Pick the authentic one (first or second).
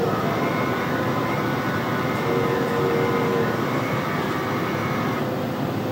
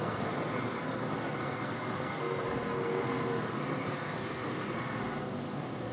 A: first